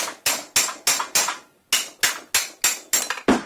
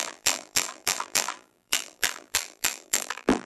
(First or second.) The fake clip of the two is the second